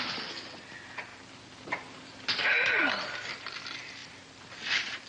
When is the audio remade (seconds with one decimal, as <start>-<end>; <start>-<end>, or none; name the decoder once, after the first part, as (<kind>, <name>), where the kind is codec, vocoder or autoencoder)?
none